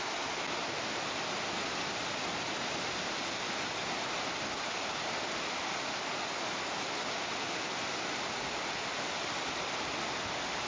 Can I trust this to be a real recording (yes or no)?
yes